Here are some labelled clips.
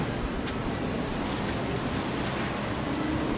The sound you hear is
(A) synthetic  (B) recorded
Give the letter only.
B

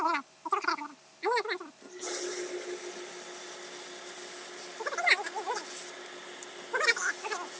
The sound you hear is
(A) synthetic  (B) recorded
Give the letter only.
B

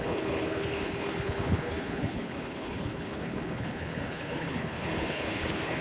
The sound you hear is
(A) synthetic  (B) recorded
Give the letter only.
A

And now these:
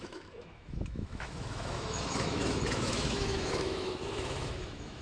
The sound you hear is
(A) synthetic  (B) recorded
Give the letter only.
A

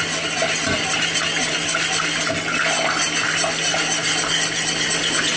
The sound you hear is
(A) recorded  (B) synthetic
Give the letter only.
A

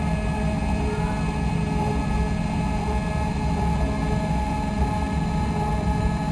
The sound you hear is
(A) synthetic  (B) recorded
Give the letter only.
B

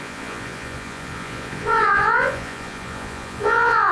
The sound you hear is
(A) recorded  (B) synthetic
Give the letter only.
B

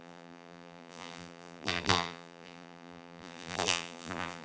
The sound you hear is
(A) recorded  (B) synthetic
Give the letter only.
B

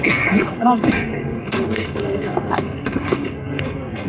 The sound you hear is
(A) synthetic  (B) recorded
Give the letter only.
A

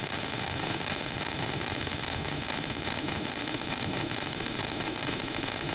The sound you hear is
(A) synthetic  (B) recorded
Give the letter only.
A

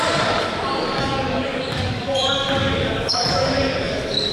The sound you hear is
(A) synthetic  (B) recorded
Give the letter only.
A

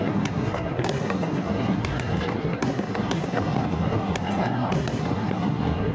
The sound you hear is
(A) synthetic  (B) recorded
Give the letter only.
A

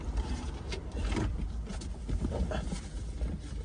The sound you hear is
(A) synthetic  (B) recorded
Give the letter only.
B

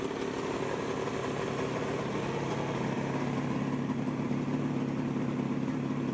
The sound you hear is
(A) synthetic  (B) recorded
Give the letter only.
B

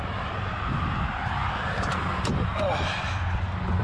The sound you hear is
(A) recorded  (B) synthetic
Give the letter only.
A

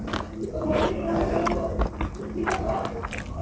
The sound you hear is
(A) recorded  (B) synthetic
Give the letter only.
A